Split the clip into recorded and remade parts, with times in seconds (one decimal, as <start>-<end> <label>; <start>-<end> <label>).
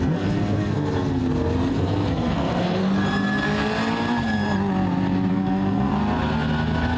0.0-1.2 remade; 1.2-1.7 recorded; 1.7-2.8 remade; 2.8-5.3 recorded; 5.3-5.9 remade; 5.9-7.0 recorded